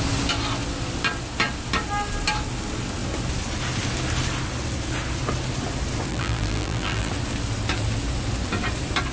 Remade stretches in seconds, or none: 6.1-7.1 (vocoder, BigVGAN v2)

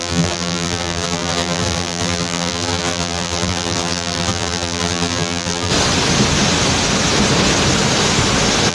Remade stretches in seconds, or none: 0.0-5.7 (vocoder, BigVGAN v2)

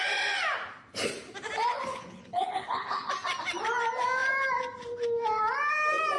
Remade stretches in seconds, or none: 1.9-3.1 (codec, HILCodec)

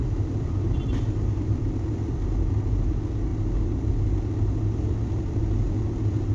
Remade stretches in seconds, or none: 0.0-1.6 (vocoder, BigVGAN v2)

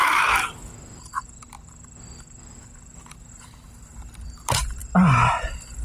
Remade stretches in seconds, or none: 3.3-5.8 (vocoder, BigVGAN v2)